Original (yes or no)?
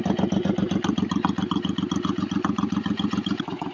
yes